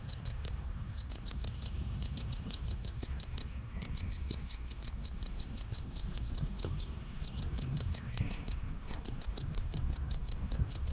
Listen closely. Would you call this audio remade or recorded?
remade